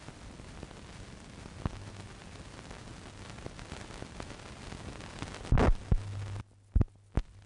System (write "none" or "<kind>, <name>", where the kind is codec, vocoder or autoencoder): none